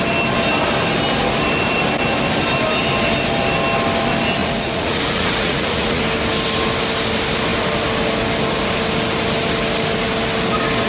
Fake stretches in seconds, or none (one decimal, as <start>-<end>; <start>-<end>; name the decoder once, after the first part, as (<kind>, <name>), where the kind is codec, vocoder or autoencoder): 4.4-6.0 (vocoder, Vocos)